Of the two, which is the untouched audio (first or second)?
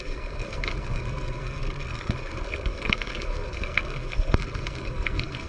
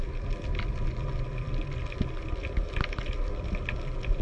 second